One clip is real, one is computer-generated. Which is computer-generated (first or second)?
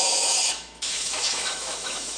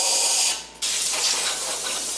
first